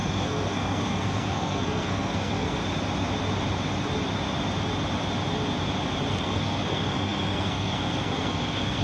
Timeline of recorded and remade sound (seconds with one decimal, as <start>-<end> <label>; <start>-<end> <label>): 0.0-2.6 remade; 2.6-6.1 recorded; 6.1-8.8 remade